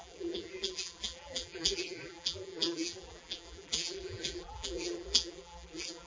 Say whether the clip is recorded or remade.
remade